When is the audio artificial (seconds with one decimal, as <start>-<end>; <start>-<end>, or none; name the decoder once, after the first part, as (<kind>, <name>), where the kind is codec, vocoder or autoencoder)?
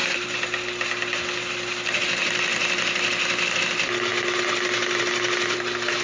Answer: none